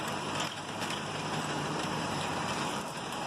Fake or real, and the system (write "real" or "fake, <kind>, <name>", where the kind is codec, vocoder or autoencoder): fake, vocoder, BigVGAN v2